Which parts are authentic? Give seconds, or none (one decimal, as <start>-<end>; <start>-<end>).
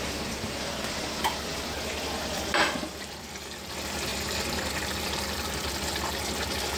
0.0-6.8